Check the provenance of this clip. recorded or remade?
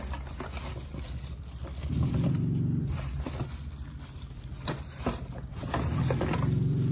remade